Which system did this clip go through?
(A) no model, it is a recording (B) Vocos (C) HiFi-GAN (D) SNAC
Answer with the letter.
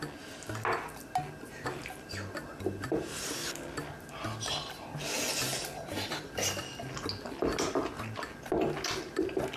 A